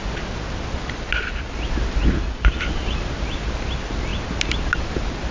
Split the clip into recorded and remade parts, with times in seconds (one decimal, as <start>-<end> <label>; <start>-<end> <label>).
0.0-5.3 recorded